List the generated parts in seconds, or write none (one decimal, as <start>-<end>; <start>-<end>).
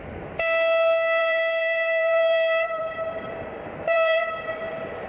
1.2-4.3